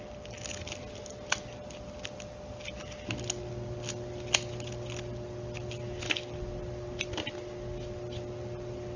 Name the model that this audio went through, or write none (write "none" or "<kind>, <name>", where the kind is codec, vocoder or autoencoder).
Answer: none